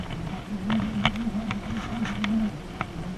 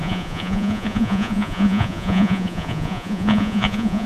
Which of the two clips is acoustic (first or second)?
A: first